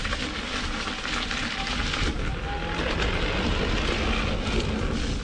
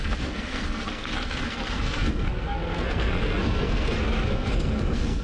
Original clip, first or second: first